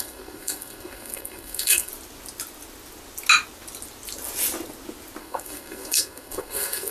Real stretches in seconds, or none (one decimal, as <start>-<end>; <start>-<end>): 1.9-5.2